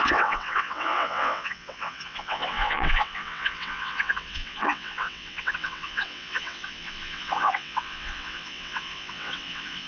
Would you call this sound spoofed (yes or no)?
yes